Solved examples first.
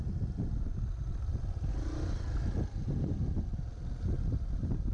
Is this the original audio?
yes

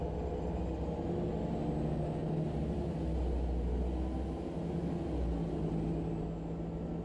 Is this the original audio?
yes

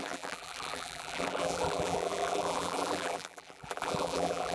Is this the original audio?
no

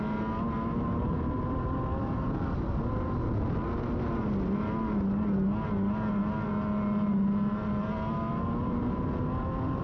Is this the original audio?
yes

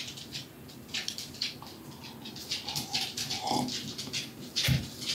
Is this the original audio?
yes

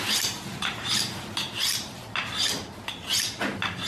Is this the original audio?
yes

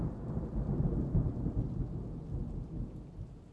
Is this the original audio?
yes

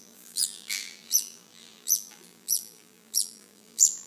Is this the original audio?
no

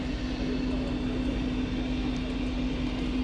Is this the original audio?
yes